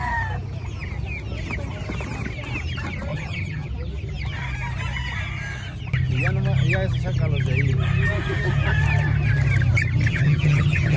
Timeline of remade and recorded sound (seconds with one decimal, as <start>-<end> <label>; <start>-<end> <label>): 0.0-3.1 recorded; 3.1-3.7 remade; 3.7-10.1 recorded; 10.1-11.0 remade